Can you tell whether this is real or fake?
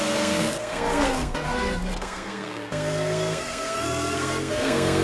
fake